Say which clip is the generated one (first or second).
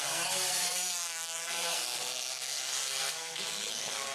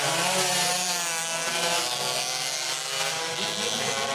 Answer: first